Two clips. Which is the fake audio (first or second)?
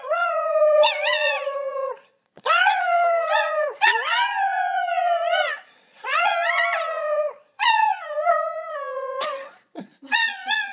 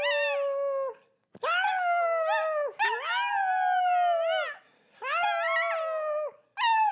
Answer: first